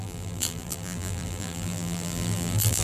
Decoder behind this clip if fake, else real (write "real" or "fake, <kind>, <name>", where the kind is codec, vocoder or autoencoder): fake, vocoder, BigVGAN v2